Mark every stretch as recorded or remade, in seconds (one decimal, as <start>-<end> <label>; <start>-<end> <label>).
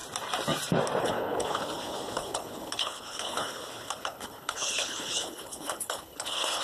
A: 0.0-1.0 recorded; 1.0-6.6 remade